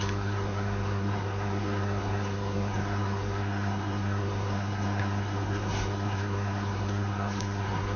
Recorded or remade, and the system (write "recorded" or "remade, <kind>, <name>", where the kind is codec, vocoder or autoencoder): remade, codec, SNAC